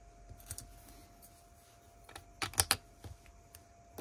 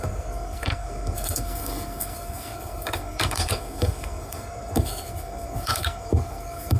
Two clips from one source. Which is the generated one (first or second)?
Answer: second